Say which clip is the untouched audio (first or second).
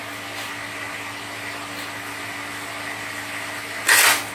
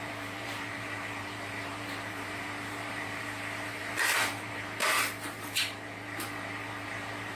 first